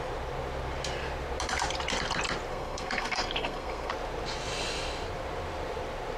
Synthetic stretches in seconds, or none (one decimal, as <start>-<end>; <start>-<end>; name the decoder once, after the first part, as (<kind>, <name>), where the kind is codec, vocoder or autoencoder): 2.5-3.9 (codec, SNAC)